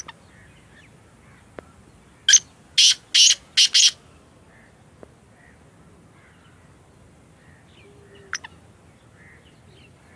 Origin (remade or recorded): recorded